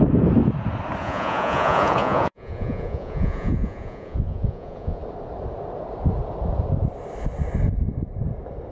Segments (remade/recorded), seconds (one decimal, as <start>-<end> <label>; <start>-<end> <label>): 0.0-1.0 recorded; 1.0-5.0 remade; 5.0-8.7 recorded